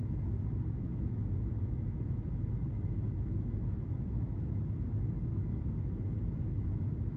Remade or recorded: remade